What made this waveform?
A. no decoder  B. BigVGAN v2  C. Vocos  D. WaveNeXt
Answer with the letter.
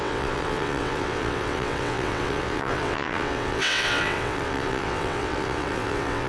D